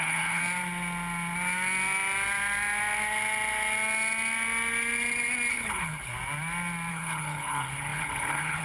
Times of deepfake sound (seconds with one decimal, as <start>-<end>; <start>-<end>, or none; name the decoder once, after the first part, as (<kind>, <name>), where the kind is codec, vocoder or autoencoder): 0.0-0.4 (codec, HILCodec); 5.5-6.1; 6.9-8.6

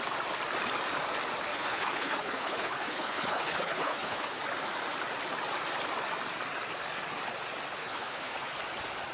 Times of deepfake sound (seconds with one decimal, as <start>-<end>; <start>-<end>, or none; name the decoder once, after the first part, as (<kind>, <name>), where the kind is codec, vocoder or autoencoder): 1.5-4.4 (codec, HILCodec); 7.8-8.6

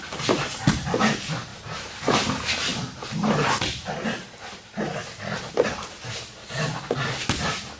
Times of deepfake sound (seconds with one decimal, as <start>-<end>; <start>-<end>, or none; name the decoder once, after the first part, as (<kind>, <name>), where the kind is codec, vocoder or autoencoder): none

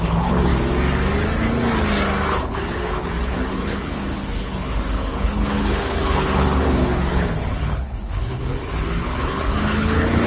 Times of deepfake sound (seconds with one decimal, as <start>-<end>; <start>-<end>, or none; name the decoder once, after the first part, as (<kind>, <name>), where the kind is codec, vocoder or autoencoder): 0.0-0.5 (codec, HILCodec); 2.3-10.3

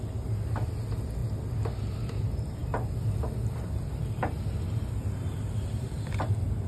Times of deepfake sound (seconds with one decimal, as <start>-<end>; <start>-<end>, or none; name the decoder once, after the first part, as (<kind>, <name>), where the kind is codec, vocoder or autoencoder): none

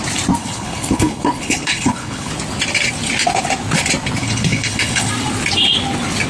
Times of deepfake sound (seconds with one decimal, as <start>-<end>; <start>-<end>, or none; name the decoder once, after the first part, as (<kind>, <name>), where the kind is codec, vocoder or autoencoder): 0.4-2.3 (codec, HILCodec); 4.2-5.1